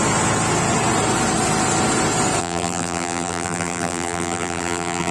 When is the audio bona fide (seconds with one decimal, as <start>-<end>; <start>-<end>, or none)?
0.0-2.4